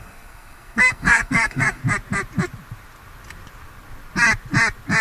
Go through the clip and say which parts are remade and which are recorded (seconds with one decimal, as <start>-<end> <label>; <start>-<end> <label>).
0.0-1.8 remade; 1.8-5.0 recorded